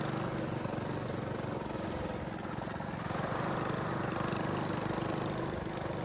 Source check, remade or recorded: recorded